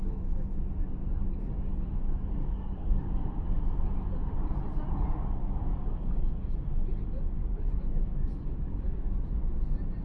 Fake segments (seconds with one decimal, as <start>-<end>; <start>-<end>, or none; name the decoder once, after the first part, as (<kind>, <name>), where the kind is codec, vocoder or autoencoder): 1.7-3.3 (codec, DAC); 5.4-6.4; 7.4-9.4